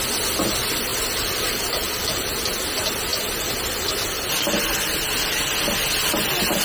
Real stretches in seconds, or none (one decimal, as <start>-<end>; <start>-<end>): 0.0-0.9; 2.5-6.6